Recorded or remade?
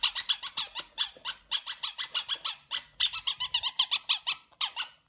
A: recorded